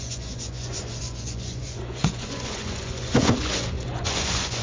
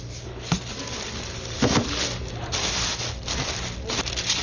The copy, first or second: first